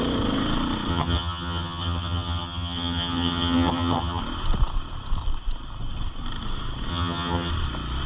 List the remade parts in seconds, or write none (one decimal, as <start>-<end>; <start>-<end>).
0.9-4.2; 6.9-7.5